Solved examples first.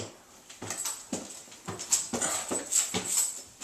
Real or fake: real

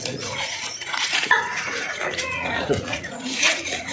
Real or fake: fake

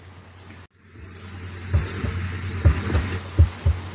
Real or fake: real